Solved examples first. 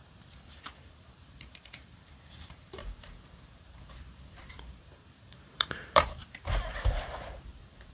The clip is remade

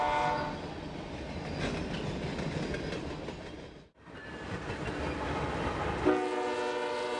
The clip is recorded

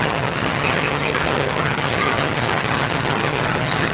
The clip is remade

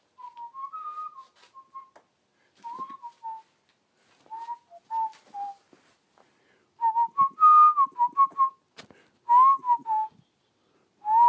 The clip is recorded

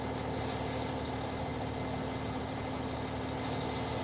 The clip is recorded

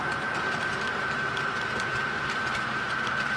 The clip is remade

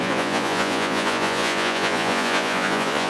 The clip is remade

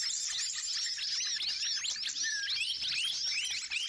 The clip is recorded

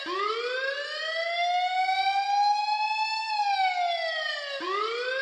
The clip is recorded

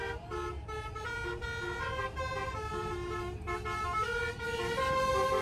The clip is recorded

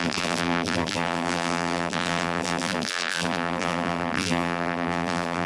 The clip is remade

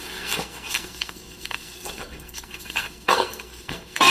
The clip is remade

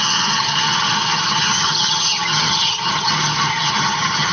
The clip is remade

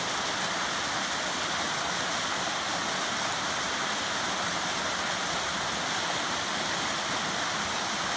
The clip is recorded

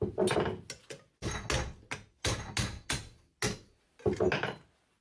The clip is recorded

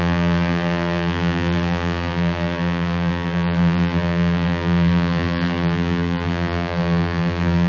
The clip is remade